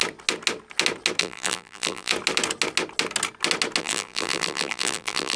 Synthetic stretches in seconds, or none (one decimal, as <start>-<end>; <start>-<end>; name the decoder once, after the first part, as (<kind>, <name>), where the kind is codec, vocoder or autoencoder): 1.2-2.1 (vocoder, BigVGAN v2); 3.8-5.4